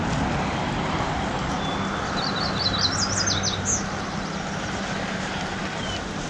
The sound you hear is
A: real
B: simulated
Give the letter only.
A